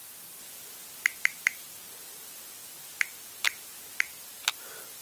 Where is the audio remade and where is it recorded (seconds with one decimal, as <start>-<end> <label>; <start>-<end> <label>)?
0.0-5.0 recorded